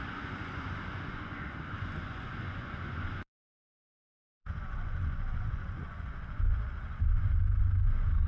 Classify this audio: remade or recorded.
remade